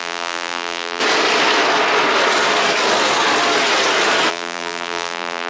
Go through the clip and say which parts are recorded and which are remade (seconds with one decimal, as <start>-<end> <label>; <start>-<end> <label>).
0.0-1.0 remade; 1.0-4.3 recorded; 4.3-5.5 remade